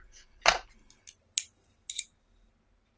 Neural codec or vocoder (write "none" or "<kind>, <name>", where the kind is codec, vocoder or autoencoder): none